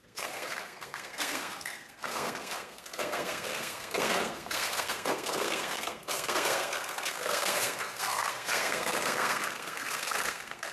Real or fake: fake